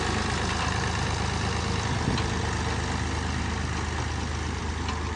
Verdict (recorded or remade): recorded